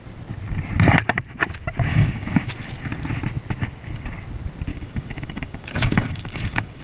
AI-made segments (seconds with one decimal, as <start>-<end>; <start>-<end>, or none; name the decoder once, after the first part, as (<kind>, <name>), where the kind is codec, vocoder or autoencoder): 1.9-2.5 (codec, DAC); 4.7-6.8